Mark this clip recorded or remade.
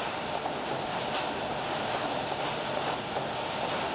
recorded